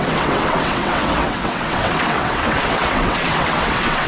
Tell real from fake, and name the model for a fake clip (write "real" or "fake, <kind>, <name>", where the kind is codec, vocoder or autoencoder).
fake, vocoder, WaveNeXt